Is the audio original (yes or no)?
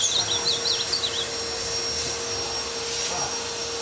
yes